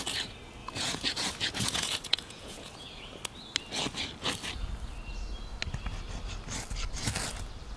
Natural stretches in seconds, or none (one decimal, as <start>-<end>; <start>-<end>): 0.0-0.6; 3.1-7.8